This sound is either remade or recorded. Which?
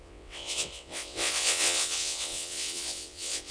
remade